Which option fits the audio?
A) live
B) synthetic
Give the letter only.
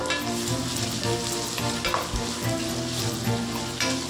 A